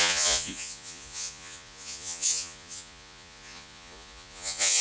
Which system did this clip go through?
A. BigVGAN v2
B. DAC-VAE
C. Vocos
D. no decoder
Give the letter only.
C